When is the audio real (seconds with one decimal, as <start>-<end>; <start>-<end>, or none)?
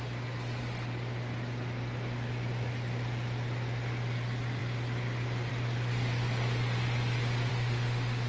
0.0-7.5